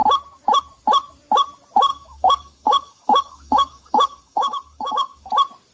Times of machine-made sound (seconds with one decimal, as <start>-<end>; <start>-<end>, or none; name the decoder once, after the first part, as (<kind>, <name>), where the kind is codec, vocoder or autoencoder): 1.9-5.3 (codec, DAC)